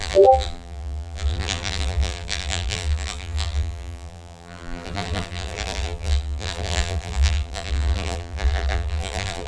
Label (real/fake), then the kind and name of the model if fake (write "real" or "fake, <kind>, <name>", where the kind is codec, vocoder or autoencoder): fake, vocoder, BigVGAN v2